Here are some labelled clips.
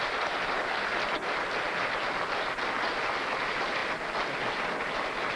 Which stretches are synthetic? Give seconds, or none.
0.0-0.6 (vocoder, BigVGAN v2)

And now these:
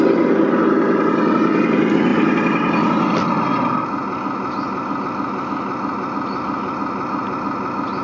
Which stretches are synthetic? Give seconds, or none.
none

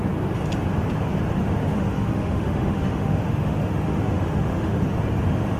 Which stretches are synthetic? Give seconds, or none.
1.4-4.8 (autoencoder, DAC-VAE)

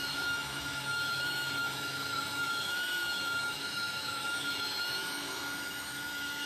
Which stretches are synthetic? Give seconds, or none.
0.0-6.5 (autoencoder, DAC-VAE)

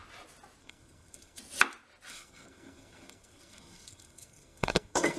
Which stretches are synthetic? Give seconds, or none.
0.6-1.4 (codec, SNAC); 2.1-5.2

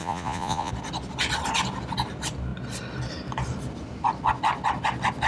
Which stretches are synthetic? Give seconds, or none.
0.0-0.7 (vocoder, Vocos)